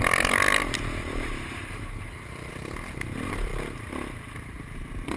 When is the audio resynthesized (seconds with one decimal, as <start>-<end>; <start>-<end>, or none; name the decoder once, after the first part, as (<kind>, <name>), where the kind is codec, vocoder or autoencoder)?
1.0-2.5 (vocoder, BigVGAN v2)